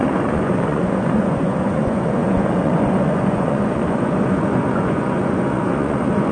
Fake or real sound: fake